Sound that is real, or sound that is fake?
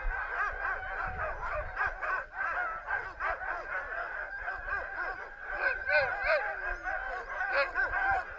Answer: real